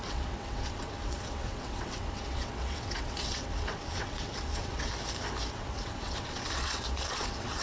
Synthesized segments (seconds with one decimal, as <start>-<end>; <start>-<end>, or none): 0.0-4.9; 5.5-7.6